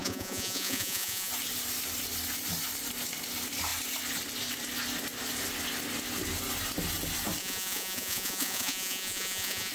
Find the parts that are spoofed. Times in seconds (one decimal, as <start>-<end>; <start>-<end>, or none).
0.0-1.3; 7.4-9.7